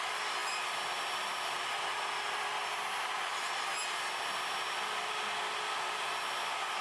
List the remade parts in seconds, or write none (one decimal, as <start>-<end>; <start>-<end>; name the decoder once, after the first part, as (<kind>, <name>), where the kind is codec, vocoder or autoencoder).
0.4-2.6 (vocoder, BigVGAN v2)